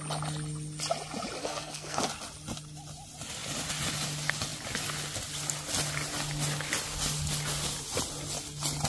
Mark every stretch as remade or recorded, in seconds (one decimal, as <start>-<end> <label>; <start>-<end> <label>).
0.0-1.4 recorded; 1.4-2.1 remade; 2.1-8.9 recorded